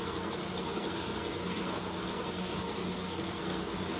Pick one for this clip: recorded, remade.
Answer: remade